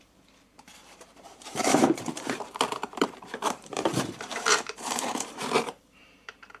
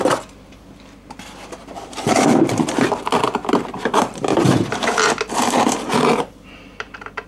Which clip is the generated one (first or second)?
first